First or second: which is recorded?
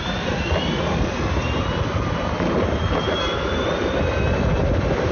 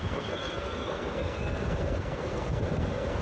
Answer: first